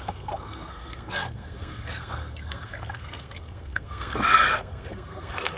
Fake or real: fake